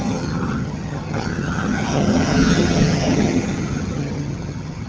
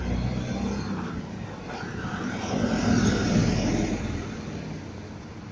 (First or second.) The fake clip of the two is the first